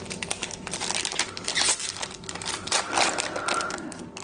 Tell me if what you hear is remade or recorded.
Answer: recorded